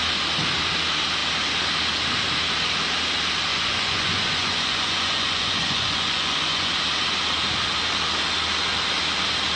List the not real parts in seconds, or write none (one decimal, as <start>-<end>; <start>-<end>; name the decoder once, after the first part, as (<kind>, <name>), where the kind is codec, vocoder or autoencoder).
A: 3.5-6.7 (vocoder, Vocos)